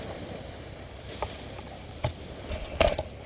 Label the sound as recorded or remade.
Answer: recorded